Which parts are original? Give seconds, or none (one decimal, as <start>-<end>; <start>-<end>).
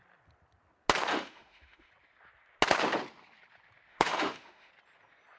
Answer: 0.0-1.1; 1.9-3.9; 4.7-5.4